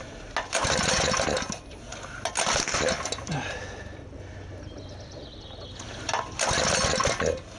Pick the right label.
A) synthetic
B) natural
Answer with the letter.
B